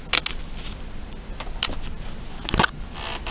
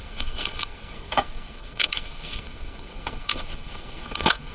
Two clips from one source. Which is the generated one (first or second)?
second